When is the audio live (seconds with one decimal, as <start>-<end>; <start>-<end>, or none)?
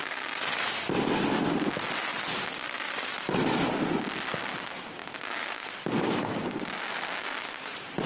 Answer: 0.0-8.1